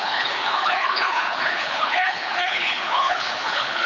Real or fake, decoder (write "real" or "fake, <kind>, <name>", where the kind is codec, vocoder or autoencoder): fake, codec, HILCodec